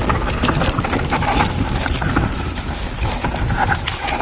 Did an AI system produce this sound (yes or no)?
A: no